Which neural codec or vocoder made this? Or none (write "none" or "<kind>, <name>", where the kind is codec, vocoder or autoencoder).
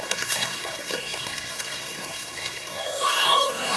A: codec, SNAC